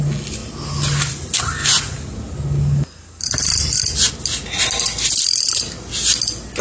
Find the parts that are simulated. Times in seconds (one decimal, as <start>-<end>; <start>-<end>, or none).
none